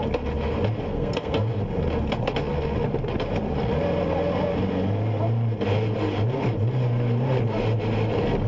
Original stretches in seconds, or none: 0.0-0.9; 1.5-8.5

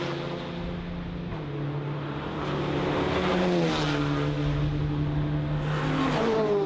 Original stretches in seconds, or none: 0.0-6.7

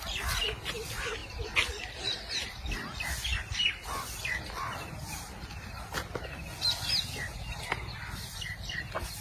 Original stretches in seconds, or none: 0.0-9.2

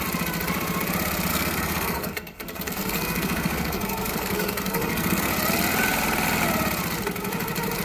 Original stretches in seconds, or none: 0.0-1.3; 5.3-7.8

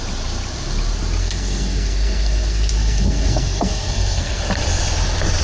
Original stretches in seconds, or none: 0.0-1.2; 4.4-5.4

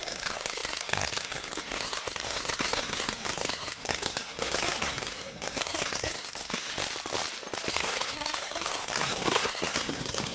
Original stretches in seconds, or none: 6.7-7.7